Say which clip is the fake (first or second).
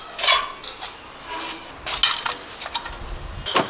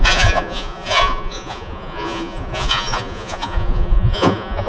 second